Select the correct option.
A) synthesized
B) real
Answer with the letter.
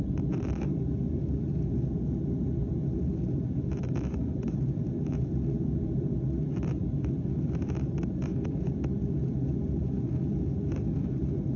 A